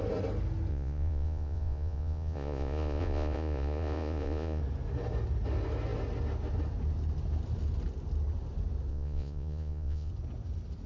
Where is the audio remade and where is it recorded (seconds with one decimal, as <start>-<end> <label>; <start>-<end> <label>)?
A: 0.0-0.7 recorded; 0.7-4.6 remade; 4.6-8.9 recorded; 8.9-10.1 remade; 10.1-10.9 recorded